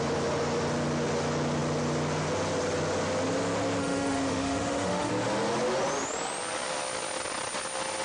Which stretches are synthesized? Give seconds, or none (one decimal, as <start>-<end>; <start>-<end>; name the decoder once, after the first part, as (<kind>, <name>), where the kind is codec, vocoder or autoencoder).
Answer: 3.8-5.1 (autoencoder, DAC-VAE)